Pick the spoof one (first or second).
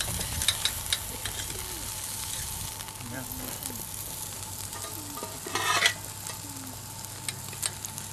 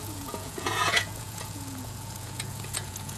second